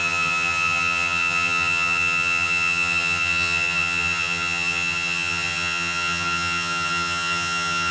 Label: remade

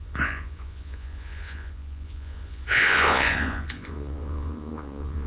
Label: remade